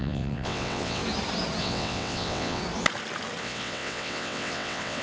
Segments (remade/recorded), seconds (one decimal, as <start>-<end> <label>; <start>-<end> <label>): 0.0-1.0 remade; 1.0-1.6 recorded; 1.6-2.6 remade; 2.6-3.4 recorded; 3.4-5.0 remade